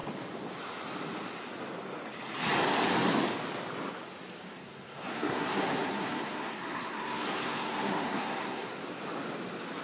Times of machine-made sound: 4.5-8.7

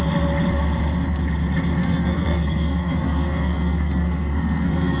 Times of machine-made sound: 1.8-5.0

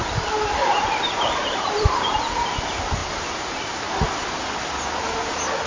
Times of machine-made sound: 0.6-2.1; 3.0-3.9

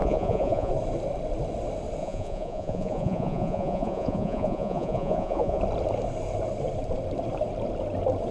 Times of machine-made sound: 0.0-0.7; 2.0-5.6

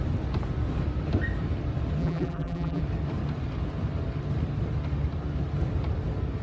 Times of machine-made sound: 2.0-2.8

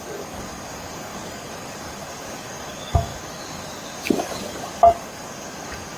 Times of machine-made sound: 0.0-6.0

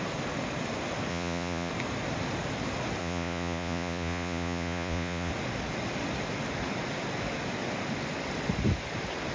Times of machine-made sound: 1.1-1.7; 3.0-5.3

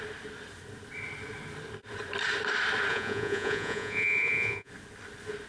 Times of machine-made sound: 2.9-4.7